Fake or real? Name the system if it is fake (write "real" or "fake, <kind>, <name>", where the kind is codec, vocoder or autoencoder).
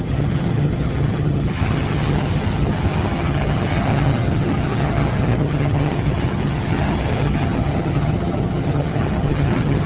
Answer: fake, vocoder, HiFi-GAN